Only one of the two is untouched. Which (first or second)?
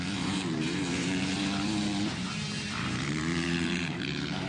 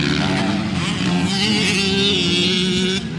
second